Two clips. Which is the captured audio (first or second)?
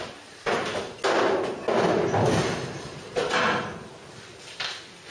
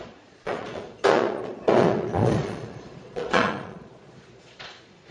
first